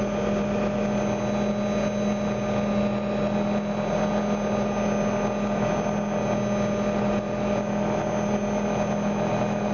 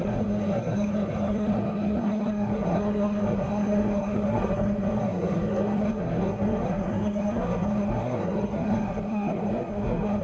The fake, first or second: second